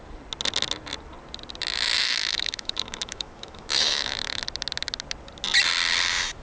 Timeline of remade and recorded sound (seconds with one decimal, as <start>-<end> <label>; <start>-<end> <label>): 0.0-1.7 recorded; 1.7-4.4 remade; 4.4-6.4 recorded